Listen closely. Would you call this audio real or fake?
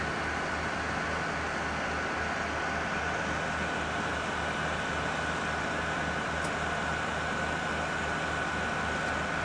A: real